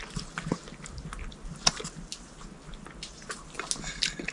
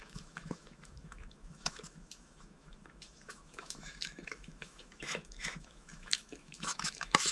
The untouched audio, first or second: first